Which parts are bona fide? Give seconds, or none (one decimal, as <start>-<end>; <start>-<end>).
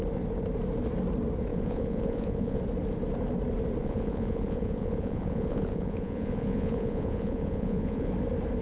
0.0-1.5; 2.6-3.8; 8.1-8.6